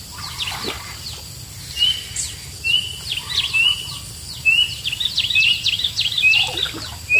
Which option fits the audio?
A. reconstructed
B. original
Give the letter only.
B